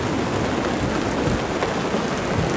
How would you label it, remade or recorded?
recorded